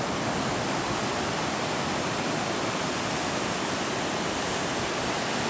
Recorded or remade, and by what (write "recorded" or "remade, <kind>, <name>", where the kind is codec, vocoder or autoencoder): recorded